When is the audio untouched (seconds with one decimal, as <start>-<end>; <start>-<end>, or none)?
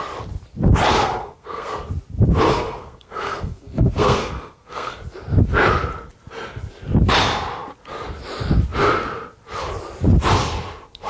0.0-0.8; 1.7-2.5; 5.0-11.1